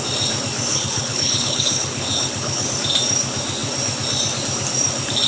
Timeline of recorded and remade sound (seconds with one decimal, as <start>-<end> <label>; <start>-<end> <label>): 0.0-0.7 recorded; 0.7-2.7 remade; 2.7-5.3 recorded